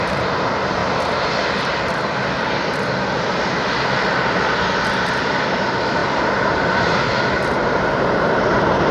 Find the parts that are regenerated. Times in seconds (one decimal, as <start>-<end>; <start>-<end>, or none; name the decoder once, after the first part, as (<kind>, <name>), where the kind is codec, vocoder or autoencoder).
0.0-0.8 (vocoder, BigVGAN v2); 5.2-8.9